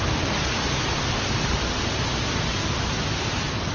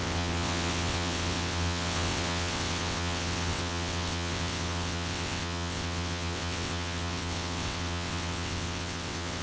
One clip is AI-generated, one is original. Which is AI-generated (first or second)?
second